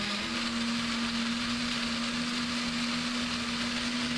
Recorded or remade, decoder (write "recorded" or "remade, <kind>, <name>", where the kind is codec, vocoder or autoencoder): recorded